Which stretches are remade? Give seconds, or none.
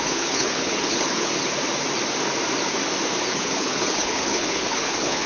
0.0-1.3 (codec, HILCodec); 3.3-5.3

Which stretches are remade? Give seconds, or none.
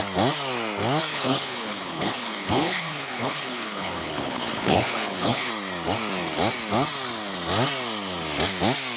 1.1-5.5 (codec, HILCodec)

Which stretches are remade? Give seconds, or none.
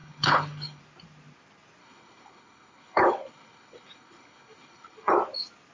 0.0-0.8 (codec, HILCodec); 1.8-5.1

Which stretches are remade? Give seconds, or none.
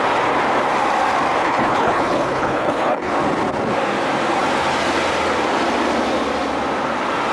1.4-3.1 (codec, HILCodec)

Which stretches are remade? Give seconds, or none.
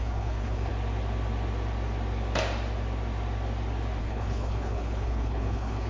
0.0-0.7 (codec, HILCodec); 4.0-5.9